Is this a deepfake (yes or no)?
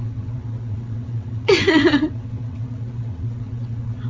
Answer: yes